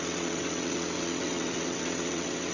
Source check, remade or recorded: remade